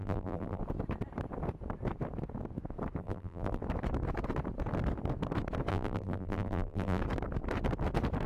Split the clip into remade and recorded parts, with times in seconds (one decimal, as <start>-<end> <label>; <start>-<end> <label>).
0.0-0.6 remade; 0.6-3.0 recorded; 3.0-3.6 remade; 3.6-5.7 recorded; 5.7-7.0 remade; 7.0-8.3 recorded